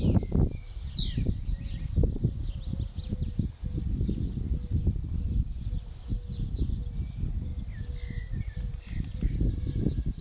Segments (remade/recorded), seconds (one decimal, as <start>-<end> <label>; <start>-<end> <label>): 0.0-10.2 recorded